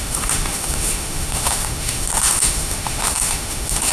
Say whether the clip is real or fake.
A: fake